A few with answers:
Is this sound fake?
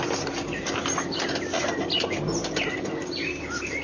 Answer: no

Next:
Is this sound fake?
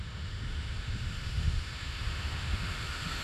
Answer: yes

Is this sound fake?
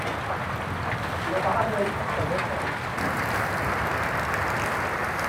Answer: no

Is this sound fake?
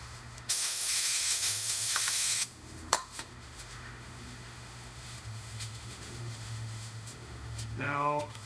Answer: yes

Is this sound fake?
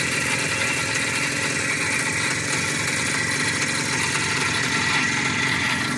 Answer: no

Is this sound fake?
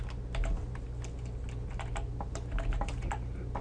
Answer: no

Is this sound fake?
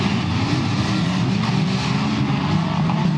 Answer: no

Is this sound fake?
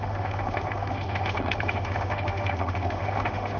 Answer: yes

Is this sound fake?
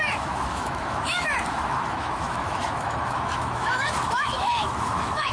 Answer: yes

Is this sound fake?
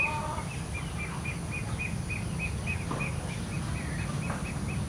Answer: no